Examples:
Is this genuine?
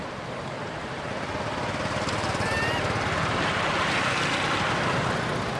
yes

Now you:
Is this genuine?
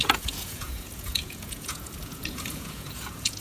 no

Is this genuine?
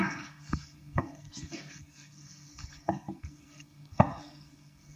no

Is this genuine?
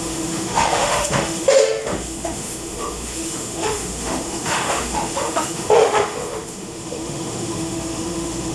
no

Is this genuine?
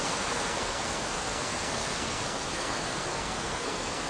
no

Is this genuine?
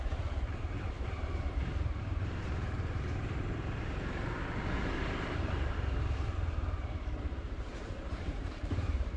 no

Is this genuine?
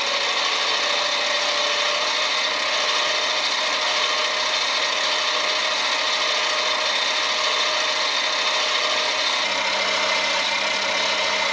yes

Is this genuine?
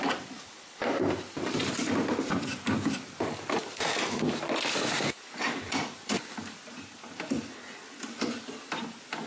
no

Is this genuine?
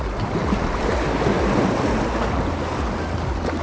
yes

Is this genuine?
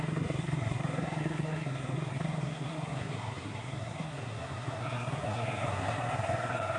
no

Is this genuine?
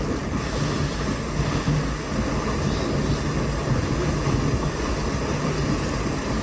yes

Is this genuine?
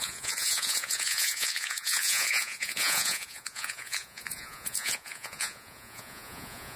no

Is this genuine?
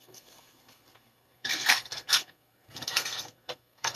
no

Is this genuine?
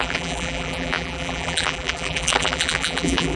no